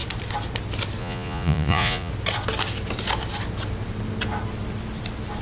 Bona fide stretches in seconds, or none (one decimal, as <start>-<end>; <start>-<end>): 0.0-1.0; 2.1-5.4